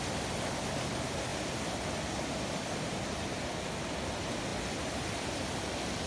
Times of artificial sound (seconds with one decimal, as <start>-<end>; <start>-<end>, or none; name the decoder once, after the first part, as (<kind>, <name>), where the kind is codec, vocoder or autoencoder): none